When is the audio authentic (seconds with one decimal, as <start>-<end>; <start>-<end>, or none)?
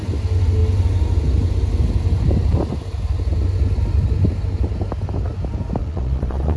0.0-5.8